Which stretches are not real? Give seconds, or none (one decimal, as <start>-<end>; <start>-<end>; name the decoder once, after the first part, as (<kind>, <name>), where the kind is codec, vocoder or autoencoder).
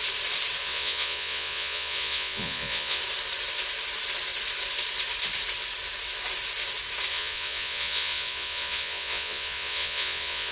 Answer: 0.6-3.0 (vocoder, Vocos); 7.1-10.5